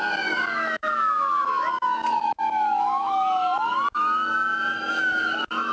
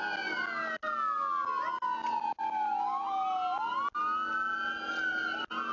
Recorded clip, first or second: second